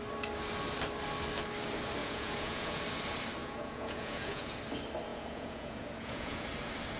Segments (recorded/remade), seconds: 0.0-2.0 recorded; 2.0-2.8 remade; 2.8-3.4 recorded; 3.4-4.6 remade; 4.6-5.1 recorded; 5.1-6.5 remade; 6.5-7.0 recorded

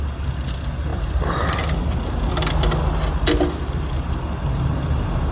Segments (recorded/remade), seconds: 0.0-0.9 recorded; 0.9-1.6 remade; 1.6-5.3 recorded

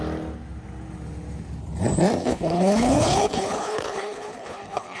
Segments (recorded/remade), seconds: 0.0-2.2 recorded; 2.2-5.0 remade

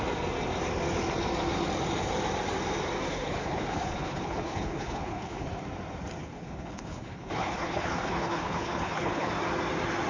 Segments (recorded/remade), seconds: 0.0-3.1 recorded; 3.1-5.5 remade; 5.5-6.2 recorded; 6.2-9.3 remade; 9.3-10.1 recorded

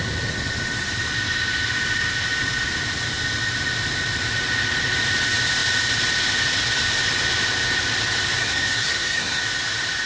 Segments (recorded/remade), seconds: 0.0-8.4 recorded; 8.4-9.4 remade; 9.4-10.1 recorded

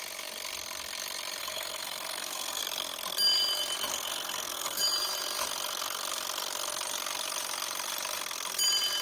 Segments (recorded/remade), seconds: 0.0-1.4 recorded; 1.4-2.6 remade; 2.6-3.9 recorded; 3.9-4.8 remade; 4.8-9.0 recorded

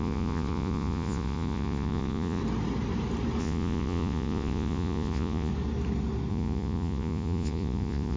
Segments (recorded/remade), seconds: 0.0-2.4 remade; 2.4-3.4 recorded; 3.4-5.5 remade; 5.5-6.3 recorded; 6.3-8.2 remade

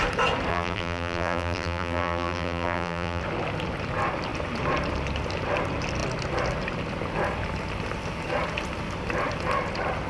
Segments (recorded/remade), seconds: 0.0-0.5 recorded; 0.5-3.2 remade; 3.2-10.1 recorded